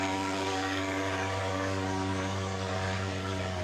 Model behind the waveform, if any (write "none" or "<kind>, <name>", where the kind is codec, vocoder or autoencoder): codec, DAC